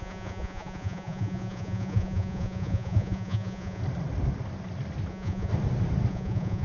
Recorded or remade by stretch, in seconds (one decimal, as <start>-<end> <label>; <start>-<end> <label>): 0.0-3.8 remade; 3.8-5.1 recorded; 5.1-5.5 remade; 5.5-6.1 recorded; 6.1-6.6 remade